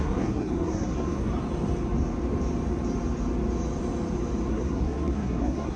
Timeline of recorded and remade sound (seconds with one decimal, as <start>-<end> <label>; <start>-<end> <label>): 0.0-1.3 remade; 1.3-4.5 recorded; 4.5-5.8 remade